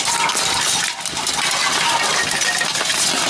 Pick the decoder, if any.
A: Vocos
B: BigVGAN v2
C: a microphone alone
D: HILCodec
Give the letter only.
C